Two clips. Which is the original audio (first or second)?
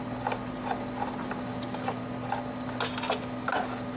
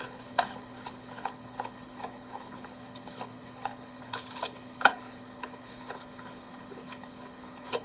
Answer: first